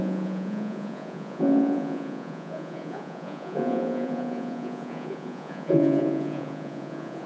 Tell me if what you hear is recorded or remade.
remade